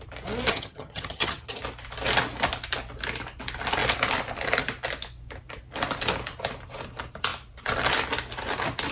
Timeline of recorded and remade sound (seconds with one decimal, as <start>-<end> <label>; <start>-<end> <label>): 0.0-0.5 recorded; 0.5-1.6 remade; 1.6-8.9 recorded